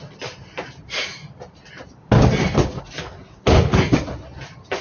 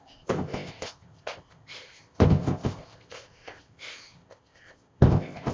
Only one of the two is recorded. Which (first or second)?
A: first